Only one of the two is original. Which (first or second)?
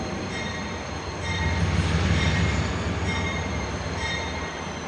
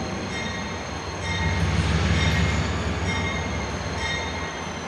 second